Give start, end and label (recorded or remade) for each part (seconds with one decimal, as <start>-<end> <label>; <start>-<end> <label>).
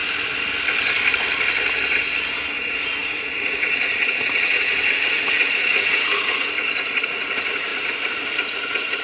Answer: 0.0-2.5 recorded; 2.5-9.0 remade